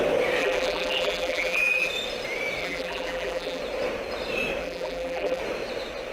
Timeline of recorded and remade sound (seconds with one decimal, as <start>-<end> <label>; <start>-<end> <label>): 0.0-0.4 recorded; 0.4-1.9 remade; 1.9-2.6 recorded; 2.6-3.6 remade; 3.6-4.6 recorded; 4.6-5.4 remade; 5.4-6.1 recorded